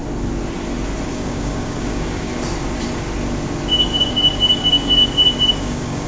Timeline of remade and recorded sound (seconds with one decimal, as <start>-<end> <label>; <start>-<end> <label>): 0.0-1.1 recorded; 1.1-2.3 remade; 2.3-4.0 recorded; 4.0-5.0 remade; 5.0-5.5 recorded; 5.5-6.1 remade